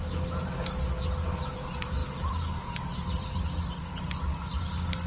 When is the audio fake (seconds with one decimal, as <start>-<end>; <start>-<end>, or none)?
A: none